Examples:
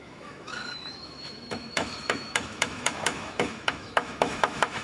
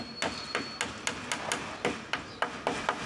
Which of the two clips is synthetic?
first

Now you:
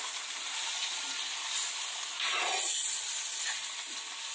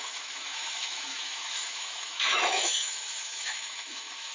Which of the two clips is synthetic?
second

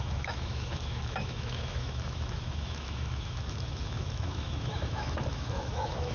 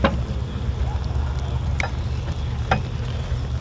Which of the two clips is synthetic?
first